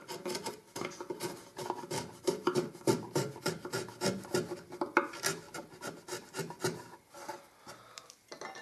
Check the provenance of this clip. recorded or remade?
recorded